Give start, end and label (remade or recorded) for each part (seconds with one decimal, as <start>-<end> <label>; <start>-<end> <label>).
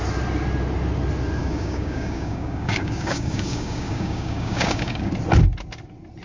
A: 0.0-1.4 recorded; 1.4-5.1 remade; 5.1-6.2 recorded